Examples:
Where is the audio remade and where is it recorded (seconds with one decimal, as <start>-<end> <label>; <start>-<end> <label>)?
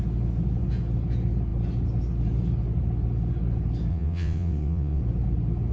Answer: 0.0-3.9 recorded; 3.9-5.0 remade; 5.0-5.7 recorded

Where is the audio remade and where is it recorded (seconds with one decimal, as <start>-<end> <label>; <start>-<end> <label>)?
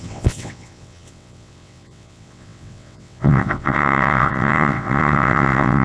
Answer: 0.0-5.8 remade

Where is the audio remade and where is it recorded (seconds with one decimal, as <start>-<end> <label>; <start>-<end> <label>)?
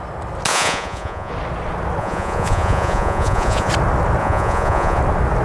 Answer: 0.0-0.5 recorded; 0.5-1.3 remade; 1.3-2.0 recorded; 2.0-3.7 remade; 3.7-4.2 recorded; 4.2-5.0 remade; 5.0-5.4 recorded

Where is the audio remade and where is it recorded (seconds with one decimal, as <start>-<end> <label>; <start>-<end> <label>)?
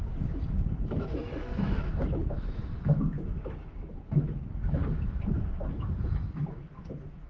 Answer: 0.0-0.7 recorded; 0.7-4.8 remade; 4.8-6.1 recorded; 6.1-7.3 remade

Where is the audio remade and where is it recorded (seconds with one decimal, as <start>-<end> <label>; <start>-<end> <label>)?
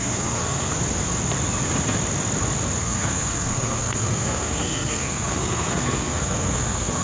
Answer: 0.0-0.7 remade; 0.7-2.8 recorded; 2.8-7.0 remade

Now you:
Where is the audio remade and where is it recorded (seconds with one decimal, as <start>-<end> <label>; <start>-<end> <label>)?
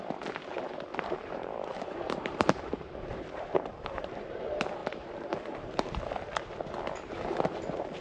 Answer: 0.0-0.9 recorded; 0.9-4.1 remade; 4.1-4.8 recorded; 4.8-6.0 remade; 6.0-8.0 recorded